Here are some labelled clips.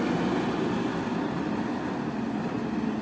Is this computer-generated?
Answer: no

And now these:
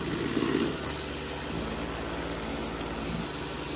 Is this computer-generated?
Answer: no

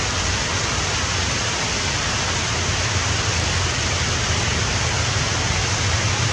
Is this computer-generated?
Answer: no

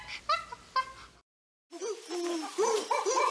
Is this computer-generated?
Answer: no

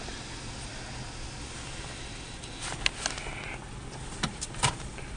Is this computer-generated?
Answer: no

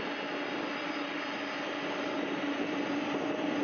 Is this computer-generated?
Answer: no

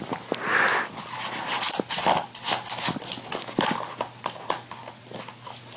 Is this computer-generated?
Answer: no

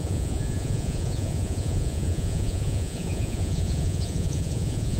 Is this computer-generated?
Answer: yes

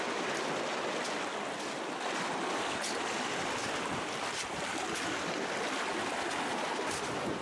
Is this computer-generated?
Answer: no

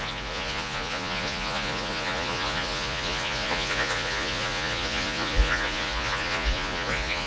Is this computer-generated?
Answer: yes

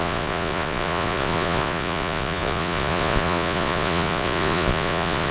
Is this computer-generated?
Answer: yes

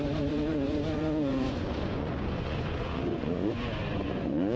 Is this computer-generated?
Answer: yes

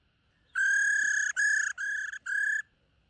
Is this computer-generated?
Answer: no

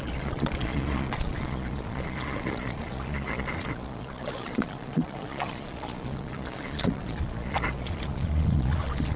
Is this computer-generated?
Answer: yes